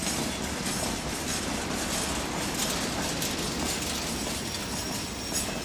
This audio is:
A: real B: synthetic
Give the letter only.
A